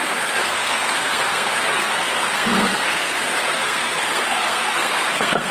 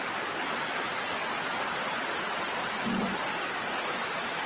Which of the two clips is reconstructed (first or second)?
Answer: first